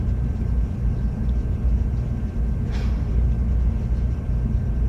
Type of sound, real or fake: real